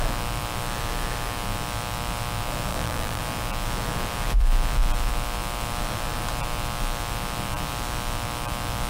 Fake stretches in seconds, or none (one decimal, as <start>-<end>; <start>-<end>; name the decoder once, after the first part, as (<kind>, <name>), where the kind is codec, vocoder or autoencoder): 2.7-3.2 (vocoder, BigVGAN v2)